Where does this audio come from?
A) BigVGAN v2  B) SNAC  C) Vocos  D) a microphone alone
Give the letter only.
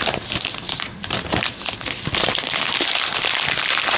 A